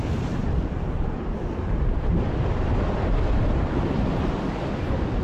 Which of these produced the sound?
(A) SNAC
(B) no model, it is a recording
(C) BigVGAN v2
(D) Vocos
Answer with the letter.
C